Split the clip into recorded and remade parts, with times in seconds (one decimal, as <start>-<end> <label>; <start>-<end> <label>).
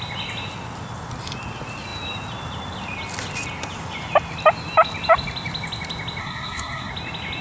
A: 0.0-6.2 recorded; 6.2-6.9 remade; 6.9-7.4 recorded